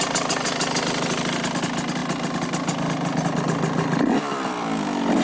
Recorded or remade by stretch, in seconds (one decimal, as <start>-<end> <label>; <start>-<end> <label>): 0.0-5.2 recorded